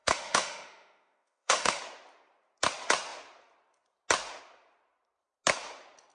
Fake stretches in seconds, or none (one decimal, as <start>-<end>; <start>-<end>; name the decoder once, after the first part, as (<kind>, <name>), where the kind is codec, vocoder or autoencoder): 0.0-1.8 (autoencoder, DAC-VAE)